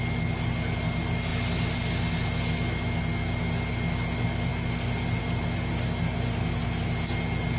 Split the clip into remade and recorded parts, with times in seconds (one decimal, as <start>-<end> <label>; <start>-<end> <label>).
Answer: 0.0-7.6 recorded